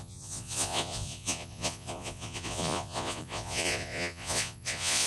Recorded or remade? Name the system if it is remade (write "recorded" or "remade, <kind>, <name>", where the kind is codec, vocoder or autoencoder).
remade, vocoder, Vocos